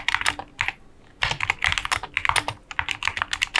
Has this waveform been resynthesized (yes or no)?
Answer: no